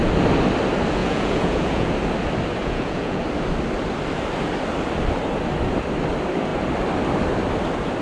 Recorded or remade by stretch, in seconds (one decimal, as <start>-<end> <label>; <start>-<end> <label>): 0.0-1.0 recorded; 1.0-1.9 remade; 1.9-2.6 recorded; 2.6-3.2 remade; 3.2-8.0 recorded

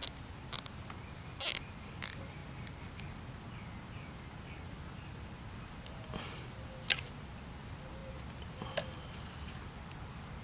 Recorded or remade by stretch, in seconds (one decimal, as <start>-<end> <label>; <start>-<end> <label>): 0.0-10.4 recorded